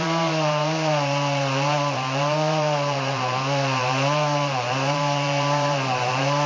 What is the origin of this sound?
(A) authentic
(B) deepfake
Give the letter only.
B